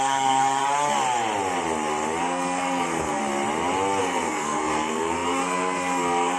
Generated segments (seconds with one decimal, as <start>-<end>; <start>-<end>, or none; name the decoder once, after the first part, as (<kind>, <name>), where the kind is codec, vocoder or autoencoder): 0.0-0.6 (codec, SNAC); 2.2-3.2; 4.0-6.4